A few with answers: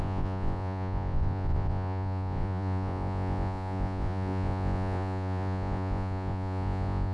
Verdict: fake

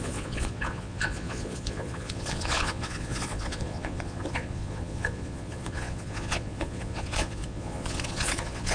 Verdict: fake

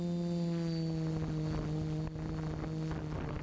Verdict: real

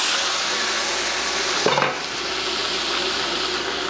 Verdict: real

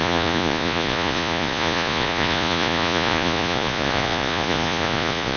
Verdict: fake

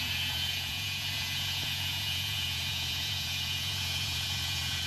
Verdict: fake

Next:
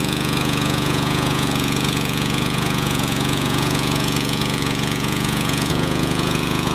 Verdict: fake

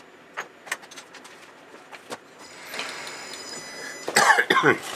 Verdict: real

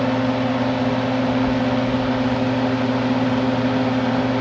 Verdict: real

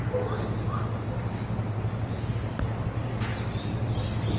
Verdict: real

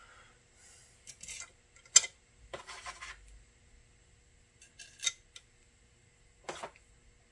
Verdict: real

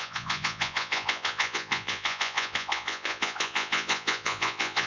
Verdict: fake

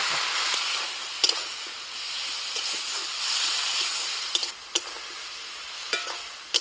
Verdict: real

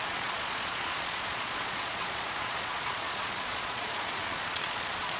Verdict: fake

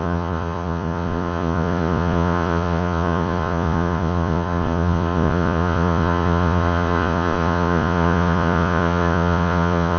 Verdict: fake